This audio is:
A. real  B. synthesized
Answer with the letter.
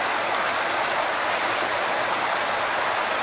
A